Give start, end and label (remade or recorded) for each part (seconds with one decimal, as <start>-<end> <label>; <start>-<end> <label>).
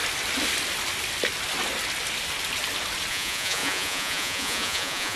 0.0-3.1 recorded; 3.1-5.2 remade